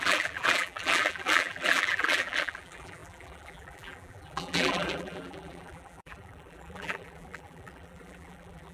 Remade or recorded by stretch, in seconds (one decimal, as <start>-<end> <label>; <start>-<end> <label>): 0.0-8.7 remade